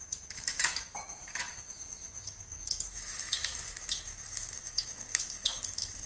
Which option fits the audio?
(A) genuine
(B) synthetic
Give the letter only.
B